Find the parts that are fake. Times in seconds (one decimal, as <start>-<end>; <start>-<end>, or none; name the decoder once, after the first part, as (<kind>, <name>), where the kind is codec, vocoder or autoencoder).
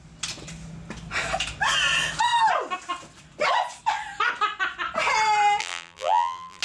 5.6-6.6 (vocoder, BigVGAN v2)